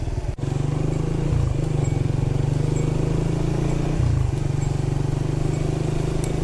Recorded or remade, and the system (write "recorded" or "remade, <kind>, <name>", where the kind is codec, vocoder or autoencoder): recorded